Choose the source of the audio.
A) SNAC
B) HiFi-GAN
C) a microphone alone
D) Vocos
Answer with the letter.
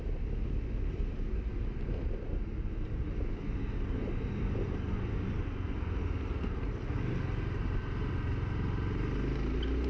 C